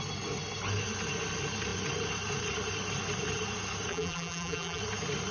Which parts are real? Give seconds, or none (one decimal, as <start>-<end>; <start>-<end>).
0.0-3.9; 4.8-5.3